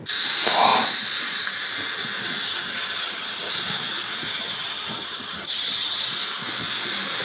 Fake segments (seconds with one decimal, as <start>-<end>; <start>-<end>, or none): 2.5-3.5; 4.3-6.1